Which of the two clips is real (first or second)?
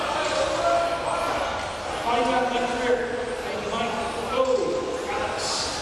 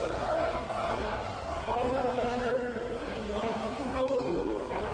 first